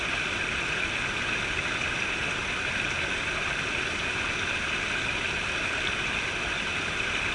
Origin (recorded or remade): recorded